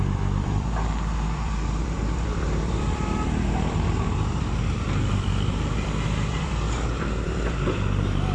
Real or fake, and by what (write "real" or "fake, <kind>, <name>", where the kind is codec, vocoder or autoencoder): fake, vocoder, BigVGAN v2